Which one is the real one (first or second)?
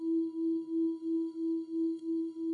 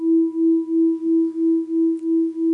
second